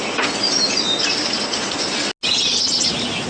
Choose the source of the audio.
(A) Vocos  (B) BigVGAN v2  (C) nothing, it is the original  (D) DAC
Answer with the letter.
C